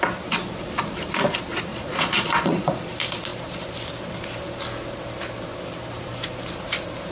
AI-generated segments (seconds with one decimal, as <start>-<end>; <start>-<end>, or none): 1.7-2.8